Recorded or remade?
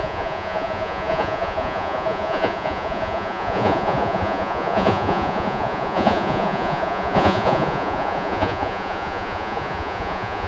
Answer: remade